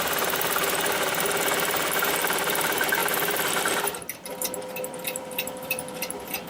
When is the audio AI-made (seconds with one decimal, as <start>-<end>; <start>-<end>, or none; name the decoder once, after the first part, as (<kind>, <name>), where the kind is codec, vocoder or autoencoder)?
0.0-4.3 (vocoder, BigVGAN v2); 4.9-6.5